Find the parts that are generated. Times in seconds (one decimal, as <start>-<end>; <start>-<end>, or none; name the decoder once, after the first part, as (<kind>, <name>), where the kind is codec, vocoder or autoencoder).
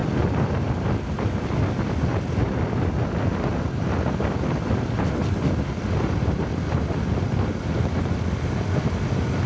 none